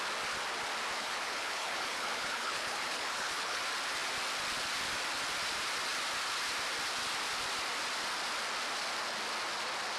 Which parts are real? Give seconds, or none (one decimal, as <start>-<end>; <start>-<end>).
0.0-1.0; 3.6-10.0